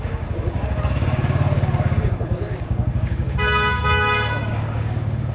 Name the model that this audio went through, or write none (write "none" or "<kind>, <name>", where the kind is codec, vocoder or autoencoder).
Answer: codec, DAC